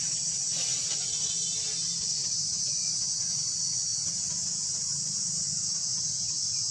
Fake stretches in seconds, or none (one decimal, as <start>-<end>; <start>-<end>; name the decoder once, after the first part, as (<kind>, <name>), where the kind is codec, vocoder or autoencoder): none